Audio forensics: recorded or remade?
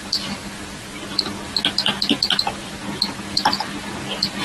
recorded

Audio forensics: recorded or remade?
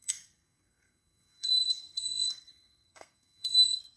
remade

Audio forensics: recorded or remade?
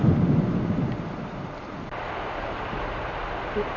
recorded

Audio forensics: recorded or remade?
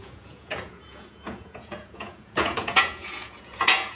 remade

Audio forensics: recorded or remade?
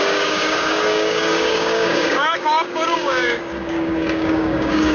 remade